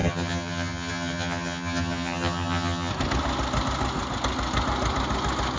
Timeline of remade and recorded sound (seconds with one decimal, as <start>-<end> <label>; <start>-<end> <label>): 0.0-2.9 remade; 2.9-5.6 recorded